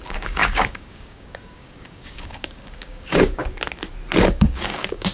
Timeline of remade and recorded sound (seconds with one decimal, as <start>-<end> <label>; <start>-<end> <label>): 0.0-3.4 remade; 3.4-4.3 recorded; 4.3-5.1 remade